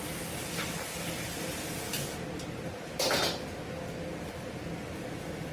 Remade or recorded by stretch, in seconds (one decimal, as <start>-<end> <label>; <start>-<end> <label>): 0.0-5.5 recorded